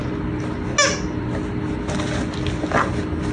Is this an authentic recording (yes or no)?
yes